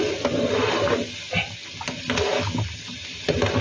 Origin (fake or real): real